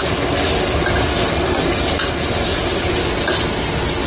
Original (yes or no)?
yes